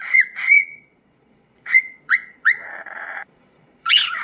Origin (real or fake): fake